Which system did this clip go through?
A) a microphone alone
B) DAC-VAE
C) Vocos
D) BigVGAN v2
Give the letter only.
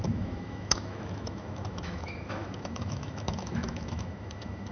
B